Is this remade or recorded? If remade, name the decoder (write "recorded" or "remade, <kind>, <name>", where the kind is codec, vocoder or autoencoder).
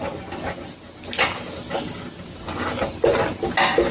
recorded